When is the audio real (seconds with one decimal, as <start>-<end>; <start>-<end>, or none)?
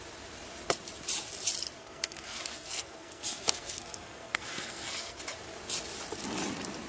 0.0-1.8; 5.2-6.9